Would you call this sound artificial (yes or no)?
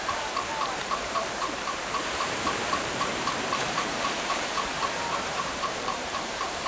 yes